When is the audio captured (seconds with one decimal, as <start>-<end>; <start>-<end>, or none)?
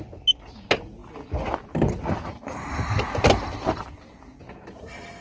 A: 0.0-5.2